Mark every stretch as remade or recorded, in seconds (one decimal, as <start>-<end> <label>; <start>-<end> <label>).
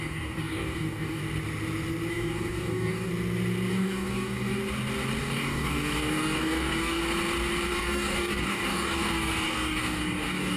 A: 0.0-1.2 remade; 1.2-2.1 recorded; 2.1-3.1 remade; 3.1-3.7 recorded; 3.7-4.6 remade; 4.6-5.2 recorded; 5.2-7.0 remade; 7.0-7.7 recorded; 7.7-10.6 remade